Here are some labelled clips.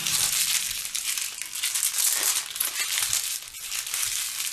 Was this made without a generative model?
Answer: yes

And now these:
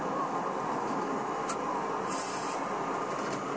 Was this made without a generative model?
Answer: yes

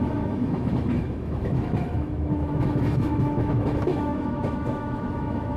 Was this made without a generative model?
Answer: no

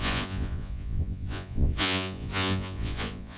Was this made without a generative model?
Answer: no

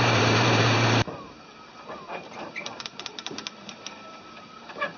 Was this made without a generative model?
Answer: no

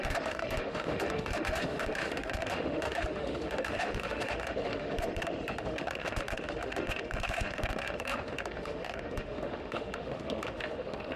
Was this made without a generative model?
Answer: no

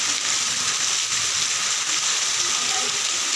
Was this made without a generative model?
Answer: yes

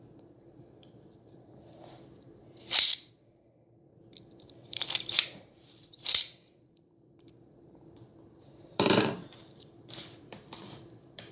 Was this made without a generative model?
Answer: no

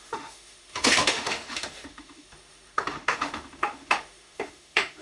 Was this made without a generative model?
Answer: no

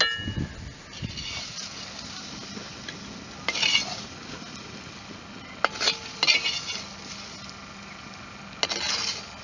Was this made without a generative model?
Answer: yes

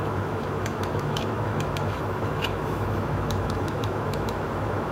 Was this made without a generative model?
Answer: no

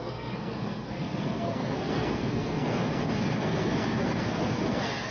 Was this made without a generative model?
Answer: no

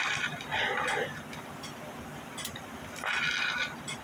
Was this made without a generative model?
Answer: yes